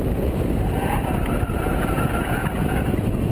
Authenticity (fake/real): real